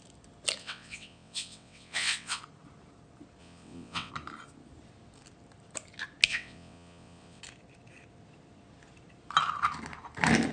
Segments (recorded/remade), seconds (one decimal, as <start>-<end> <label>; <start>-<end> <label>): 0.0-0.6 recorded; 0.6-2.4 remade; 2.4-3.4 recorded; 3.4-4.1 remade; 4.1-6.3 recorded; 6.3-7.4 remade; 7.4-10.5 recorded